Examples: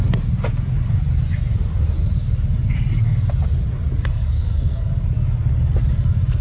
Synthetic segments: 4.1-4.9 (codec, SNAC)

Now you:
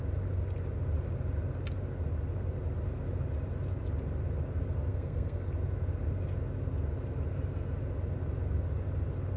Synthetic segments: 4.9-5.5 (codec, SNAC)

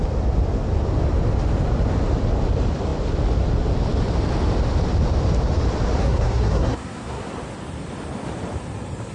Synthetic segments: 6.0-7.3 (codec, SNAC)

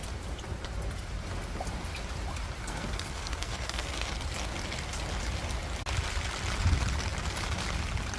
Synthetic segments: 2.6-4.1 (codec, SNAC)

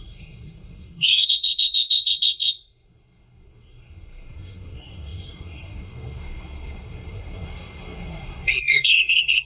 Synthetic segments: 0.0-9.5 (codec, SNAC)

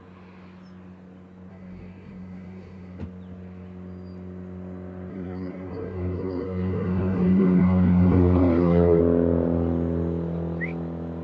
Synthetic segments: 1.5-3.0 (codec, SNAC); 5.1-9.0